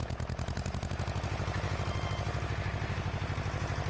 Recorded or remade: recorded